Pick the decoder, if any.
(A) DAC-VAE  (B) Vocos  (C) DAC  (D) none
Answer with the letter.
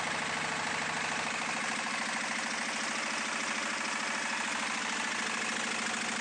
D